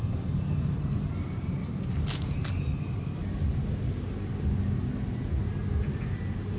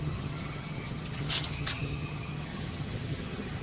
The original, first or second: first